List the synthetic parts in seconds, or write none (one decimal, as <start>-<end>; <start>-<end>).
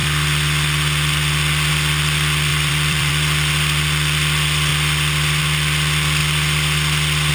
2.5-3.1